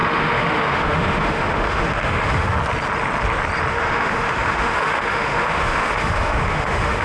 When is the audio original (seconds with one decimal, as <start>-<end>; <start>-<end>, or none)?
2.6-3.7